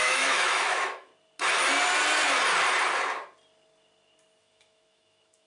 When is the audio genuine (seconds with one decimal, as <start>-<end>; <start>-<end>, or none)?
1.1-4.4